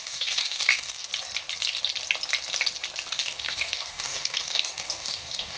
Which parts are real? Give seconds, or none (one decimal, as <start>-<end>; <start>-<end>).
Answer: 1.1-3.1